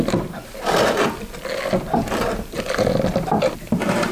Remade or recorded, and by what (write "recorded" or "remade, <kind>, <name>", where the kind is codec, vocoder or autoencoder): remade, vocoder, BigVGAN v2